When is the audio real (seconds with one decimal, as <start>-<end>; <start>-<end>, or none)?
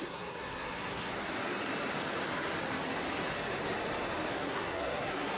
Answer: 1.1-4.3